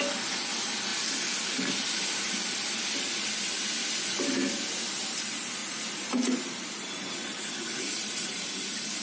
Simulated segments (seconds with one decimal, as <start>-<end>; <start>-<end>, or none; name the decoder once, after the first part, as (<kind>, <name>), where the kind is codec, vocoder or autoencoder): 5.6-8.5 (vocoder, BigVGAN v2)